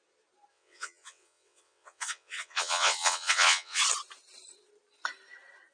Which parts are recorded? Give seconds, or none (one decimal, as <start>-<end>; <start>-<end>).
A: 0.0-0.5; 3.8-5.7